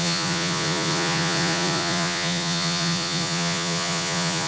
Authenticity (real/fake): fake